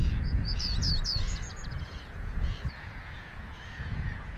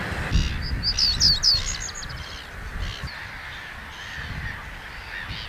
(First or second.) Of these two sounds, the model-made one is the first